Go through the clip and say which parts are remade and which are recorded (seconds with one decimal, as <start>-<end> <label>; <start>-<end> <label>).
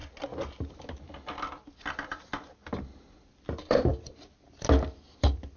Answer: 0.0-3.3 recorded; 3.3-3.9 remade; 3.9-5.6 recorded